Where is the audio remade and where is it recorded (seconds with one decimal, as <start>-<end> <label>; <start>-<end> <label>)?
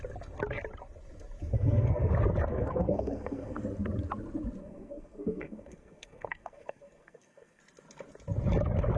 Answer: 0.0-1.5 recorded; 1.5-2.1 remade; 2.1-2.5 recorded; 2.5-3.6 remade; 3.6-4.6 recorded; 4.6-7.6 remade; 7.6-9.0 recorded